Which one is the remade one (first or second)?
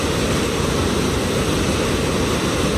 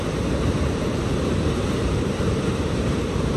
second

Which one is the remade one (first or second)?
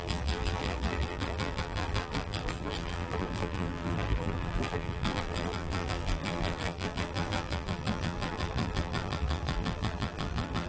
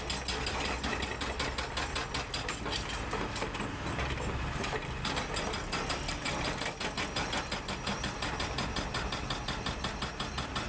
first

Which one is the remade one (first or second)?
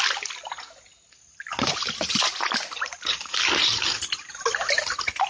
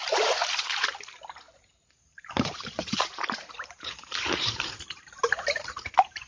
second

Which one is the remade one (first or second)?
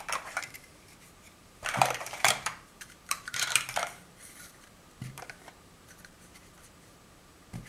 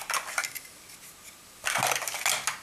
first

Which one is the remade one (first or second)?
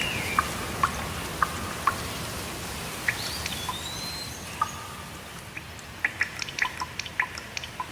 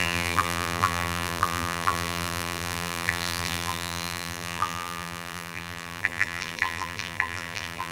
second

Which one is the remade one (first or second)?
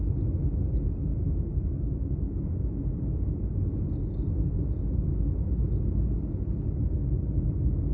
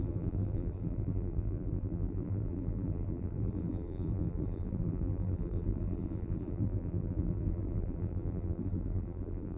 second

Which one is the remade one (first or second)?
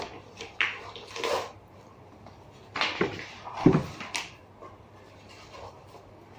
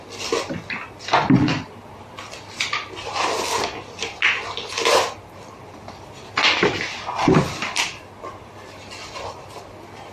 first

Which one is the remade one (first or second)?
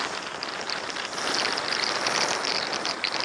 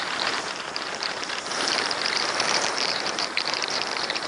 second